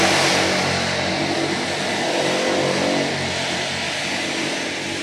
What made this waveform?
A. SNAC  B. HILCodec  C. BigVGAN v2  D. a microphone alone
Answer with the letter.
D